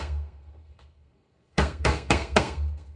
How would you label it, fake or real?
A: fake